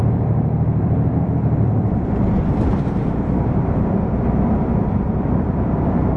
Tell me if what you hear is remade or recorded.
remade